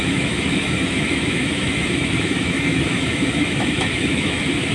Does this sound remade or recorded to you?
remade